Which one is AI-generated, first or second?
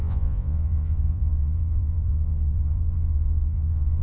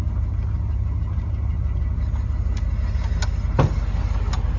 first